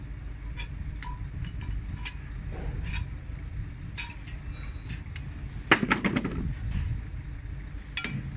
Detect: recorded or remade recorded